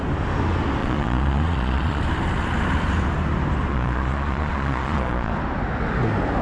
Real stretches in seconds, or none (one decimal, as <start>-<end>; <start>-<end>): 0.0-0.8; 2.0-3.7; 5.3-6.4